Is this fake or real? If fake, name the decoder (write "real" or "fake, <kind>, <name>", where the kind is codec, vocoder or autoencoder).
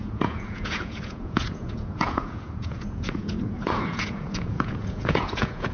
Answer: fake, vocoder, Vocos